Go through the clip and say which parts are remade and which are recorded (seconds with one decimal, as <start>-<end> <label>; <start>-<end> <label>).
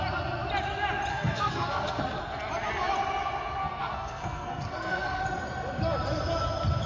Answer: 0.0-1.1 recorded; 1.1-2.2 remade; 2.2-3.6 recorded; 3.6-5.2 remade; 5.2-6.9 recorded